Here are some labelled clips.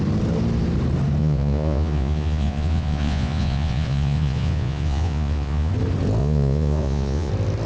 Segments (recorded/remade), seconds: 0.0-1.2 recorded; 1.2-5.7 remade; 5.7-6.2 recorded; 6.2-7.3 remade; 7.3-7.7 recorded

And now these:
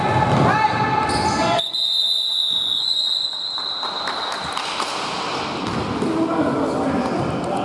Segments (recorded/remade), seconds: 0.0-1.4 recorded; 1.4-3.3 remade; 3.3-7.6 recorded

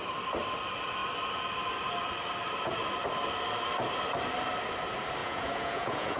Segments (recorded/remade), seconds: 0.0-5.2 recorded; 5.2-6.2 remade